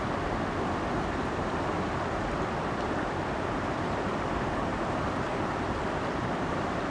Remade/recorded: remade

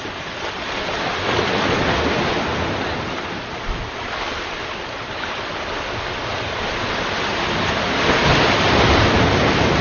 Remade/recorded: recorded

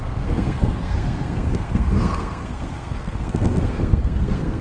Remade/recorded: remade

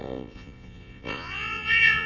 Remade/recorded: remade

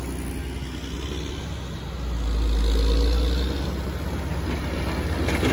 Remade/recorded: recorded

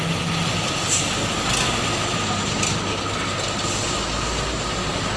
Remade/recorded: recorded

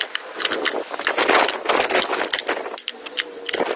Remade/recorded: recorded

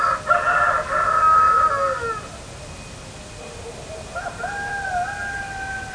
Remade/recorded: recorded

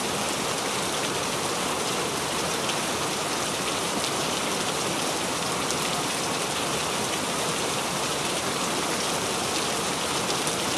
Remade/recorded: remade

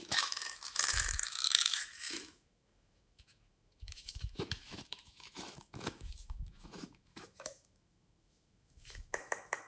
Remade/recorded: remade